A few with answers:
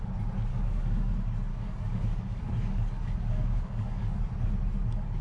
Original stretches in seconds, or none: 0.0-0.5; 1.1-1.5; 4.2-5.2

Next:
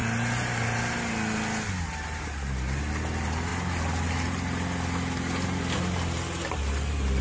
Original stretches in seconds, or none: 0.0-7.2

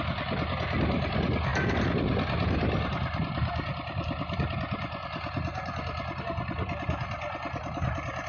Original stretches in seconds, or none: 0.0-8.3